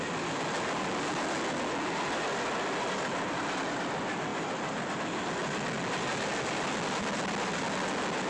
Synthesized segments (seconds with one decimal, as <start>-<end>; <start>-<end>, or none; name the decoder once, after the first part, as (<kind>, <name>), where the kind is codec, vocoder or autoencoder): none